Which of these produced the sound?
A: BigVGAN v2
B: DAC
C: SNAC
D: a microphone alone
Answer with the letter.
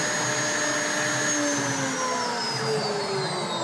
D